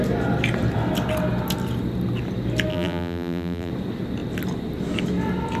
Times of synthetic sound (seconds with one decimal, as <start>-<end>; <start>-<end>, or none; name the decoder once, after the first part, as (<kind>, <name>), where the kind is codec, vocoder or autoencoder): 2.7-3.7 (vocoder, BigVGAN v2)